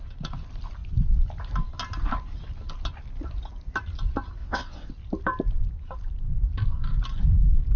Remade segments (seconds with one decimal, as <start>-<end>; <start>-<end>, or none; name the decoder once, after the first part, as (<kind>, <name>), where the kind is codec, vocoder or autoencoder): 4.4-4.9 (vocoder, WaveNeXt)